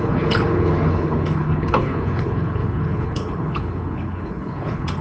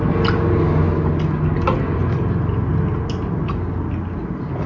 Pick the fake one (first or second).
first